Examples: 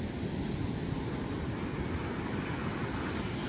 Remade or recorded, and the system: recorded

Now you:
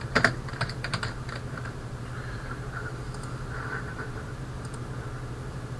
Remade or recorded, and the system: remade, vocoder, BigVGAN v2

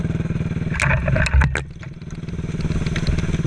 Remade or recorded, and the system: recorded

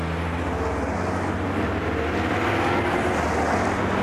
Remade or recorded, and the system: recorded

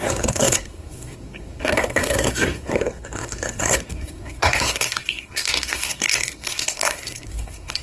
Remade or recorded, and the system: remade, codec, SNAC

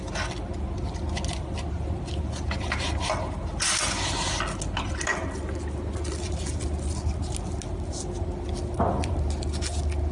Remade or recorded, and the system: recorded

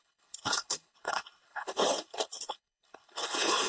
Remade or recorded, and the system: remade, codec, HILCodec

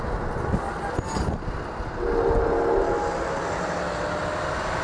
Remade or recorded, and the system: recorded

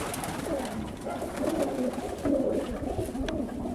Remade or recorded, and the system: recorded